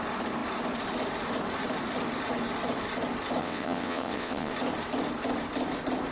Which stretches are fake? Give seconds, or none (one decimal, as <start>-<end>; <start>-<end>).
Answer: 3.4-4.5